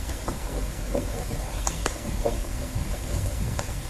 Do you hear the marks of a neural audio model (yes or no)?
yes